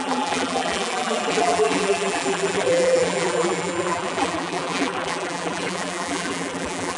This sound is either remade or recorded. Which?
remade